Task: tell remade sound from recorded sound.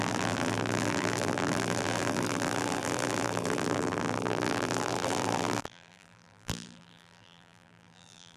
remade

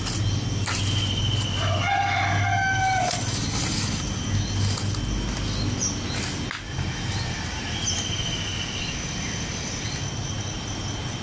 recorded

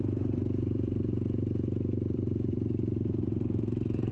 remade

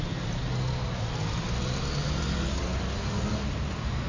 recorded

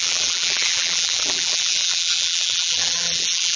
remade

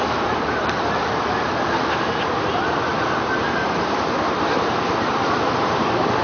remade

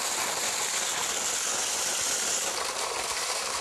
remade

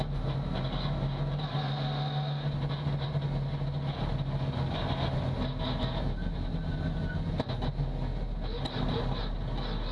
recorded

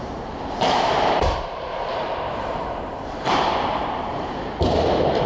remade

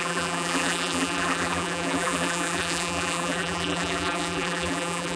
remade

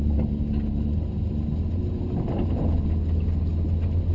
recorded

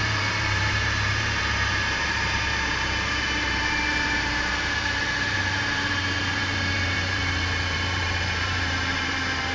remade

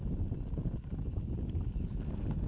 recorded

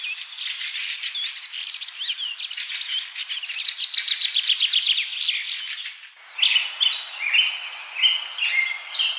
recorded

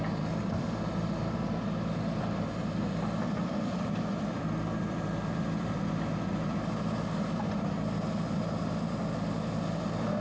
remade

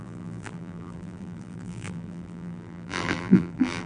remade